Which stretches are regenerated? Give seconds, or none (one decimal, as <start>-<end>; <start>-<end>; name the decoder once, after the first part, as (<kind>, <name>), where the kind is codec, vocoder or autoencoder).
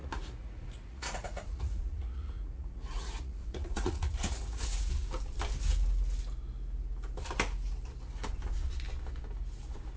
0.0-4.9 (vocoder, Vocos)